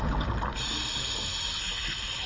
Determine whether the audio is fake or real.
real